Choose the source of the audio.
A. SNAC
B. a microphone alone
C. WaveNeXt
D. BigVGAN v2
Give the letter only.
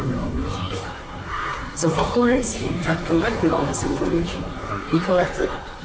A